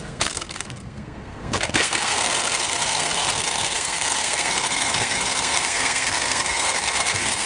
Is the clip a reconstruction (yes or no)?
yes